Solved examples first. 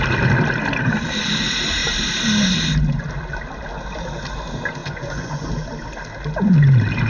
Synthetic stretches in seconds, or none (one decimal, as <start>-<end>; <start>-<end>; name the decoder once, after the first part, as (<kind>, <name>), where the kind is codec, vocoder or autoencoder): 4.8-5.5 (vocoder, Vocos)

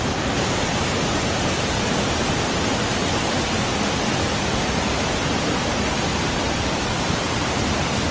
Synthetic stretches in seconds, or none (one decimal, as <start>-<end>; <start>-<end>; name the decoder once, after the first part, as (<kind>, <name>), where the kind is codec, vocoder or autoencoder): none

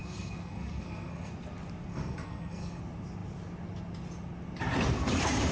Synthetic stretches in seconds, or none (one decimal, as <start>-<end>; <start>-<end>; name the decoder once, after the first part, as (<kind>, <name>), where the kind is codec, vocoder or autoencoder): 0.0-1.3 (codec, SNAC); 1.9-2.8

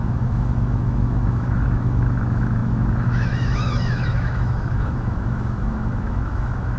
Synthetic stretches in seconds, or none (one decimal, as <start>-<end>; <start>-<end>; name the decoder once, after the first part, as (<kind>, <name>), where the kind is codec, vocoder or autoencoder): 0.0-6.8 (autoencoder, DAC-VAE)

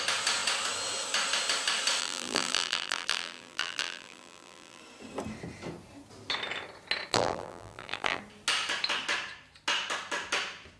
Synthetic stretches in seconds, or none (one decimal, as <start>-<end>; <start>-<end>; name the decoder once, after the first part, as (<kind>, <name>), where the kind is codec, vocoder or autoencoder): 2.0-4.8 (vocoder, BigVGAN v2); 7.1-8.2

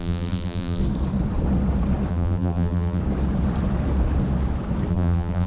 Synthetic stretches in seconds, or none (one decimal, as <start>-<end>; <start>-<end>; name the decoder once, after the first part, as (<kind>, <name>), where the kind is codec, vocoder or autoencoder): 0.0-0.8 (vocoder, BigVGAN v2); 2.1-3.0; 4.9-5.5

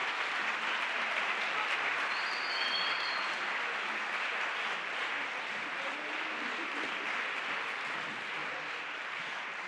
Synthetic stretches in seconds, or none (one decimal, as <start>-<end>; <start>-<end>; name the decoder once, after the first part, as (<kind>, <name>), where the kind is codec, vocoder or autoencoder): 0.0-8.4 (vocoder, BigVGAN v2); 9.2-9.7